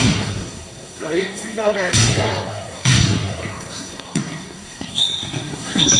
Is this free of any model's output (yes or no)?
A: no